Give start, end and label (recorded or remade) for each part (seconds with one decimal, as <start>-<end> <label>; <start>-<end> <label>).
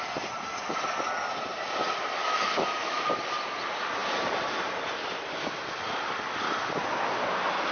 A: 0.0-2.2 recorded; 2.2-3.0 remade; 3.0-7.7 recorded